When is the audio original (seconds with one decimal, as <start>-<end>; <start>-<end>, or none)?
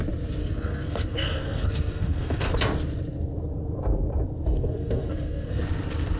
0.0-0.4; 2.5-4.5; 5.6-6.2